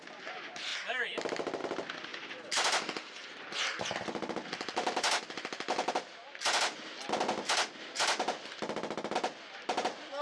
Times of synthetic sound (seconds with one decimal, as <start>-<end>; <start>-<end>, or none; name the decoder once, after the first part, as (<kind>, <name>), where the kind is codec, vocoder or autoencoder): none